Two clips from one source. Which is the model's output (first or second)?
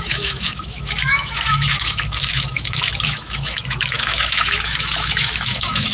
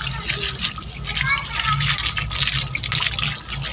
first